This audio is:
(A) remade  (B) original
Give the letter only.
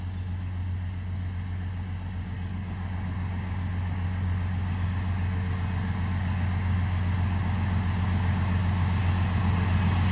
B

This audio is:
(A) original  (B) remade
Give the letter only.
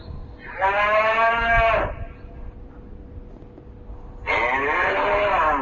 A